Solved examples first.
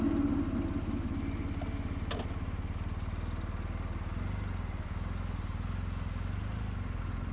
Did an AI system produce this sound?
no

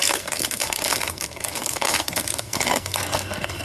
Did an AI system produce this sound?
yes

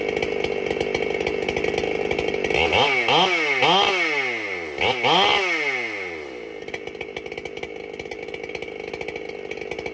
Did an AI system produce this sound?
no